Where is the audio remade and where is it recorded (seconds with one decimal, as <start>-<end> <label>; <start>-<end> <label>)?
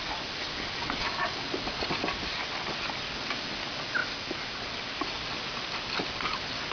0.0-6.7 recorded